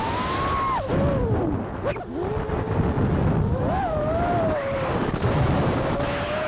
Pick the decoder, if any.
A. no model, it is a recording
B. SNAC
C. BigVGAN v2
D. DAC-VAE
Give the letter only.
A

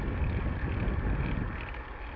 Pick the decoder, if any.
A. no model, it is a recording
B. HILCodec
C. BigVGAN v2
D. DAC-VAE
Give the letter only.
A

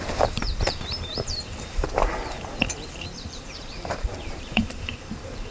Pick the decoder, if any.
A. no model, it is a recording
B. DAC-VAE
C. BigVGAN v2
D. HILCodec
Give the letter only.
C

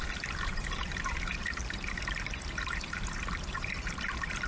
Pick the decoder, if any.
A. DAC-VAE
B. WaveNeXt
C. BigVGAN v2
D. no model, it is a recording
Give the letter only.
C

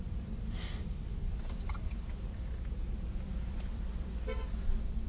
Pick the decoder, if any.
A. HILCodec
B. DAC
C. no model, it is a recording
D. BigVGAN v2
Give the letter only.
D